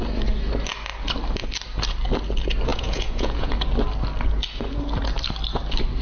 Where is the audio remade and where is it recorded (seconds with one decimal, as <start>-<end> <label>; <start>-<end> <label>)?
0.0-2.7 recorded; 2.7-3.5 remade; 3.5-6.0 recorded